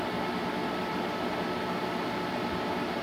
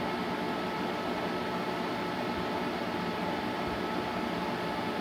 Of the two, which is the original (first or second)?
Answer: second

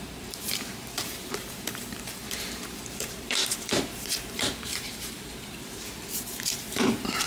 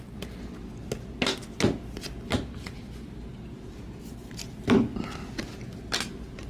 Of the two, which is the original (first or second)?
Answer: second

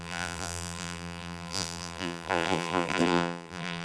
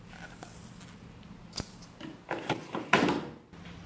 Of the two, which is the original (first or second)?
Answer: second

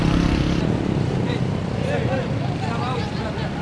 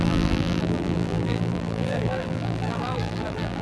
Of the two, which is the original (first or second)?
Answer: first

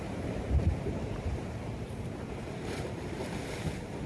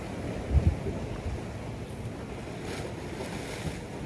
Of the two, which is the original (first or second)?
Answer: second